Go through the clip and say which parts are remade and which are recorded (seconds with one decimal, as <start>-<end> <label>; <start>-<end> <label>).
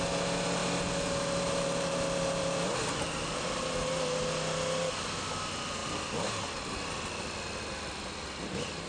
0.0-8.9 recorded